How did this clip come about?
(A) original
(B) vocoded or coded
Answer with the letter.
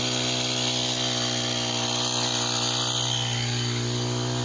A